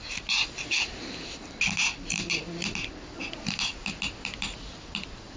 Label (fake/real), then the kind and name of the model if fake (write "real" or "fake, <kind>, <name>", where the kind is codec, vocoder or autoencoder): real